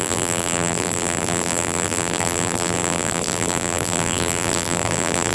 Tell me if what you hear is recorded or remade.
remade